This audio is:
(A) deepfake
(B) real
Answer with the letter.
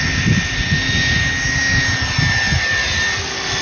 B